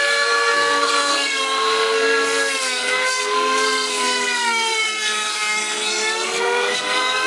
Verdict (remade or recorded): remade